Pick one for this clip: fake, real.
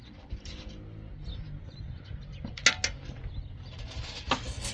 real